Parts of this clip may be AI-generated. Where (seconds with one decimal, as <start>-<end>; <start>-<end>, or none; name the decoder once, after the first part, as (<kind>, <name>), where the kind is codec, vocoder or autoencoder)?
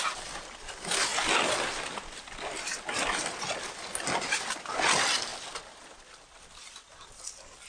none